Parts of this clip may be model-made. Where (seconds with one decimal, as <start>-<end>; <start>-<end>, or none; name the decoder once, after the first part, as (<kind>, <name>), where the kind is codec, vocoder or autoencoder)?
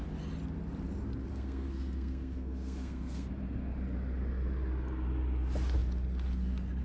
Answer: 1.3-3.3 (codec, SNAC)